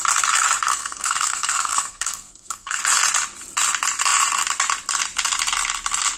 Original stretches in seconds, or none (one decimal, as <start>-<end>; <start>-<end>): 0.0-0.7; 2.8-6.2